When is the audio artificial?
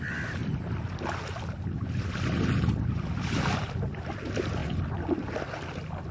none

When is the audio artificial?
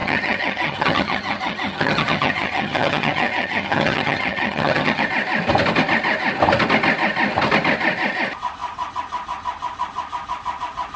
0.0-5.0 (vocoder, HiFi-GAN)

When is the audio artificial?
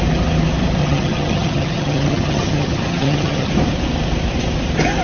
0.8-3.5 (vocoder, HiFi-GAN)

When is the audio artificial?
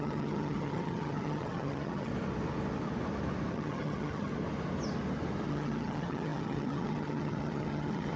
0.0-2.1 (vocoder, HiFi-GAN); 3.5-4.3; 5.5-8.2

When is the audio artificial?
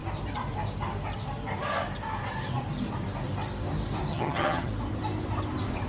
4.1-4.7 (vocoder, HiFi-GAN)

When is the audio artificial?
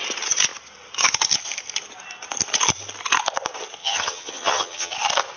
3.8-4.9 (vocoder, HiFi-GAN)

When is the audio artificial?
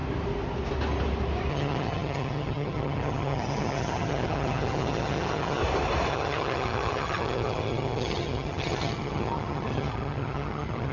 1.5-5.6 (vocoder, HiFi-GAN); 6.1-10.9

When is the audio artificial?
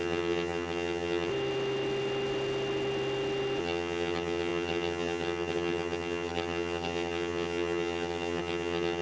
0.0-1.3 (vocoder, HiFi-GAN); 3.6-9.0